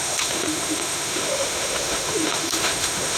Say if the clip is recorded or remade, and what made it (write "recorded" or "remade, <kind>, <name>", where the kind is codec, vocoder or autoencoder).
remade, autoencoder, DAC-VAE